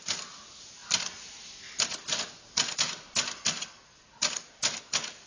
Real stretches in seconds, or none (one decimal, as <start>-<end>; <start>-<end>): 0.0-5.3